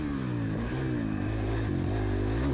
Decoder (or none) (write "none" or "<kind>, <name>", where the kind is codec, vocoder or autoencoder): none